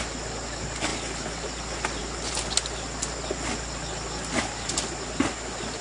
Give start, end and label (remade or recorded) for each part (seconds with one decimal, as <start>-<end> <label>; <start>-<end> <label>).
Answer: 0.0-5.8 recorded